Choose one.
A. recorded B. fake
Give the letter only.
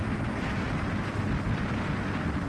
A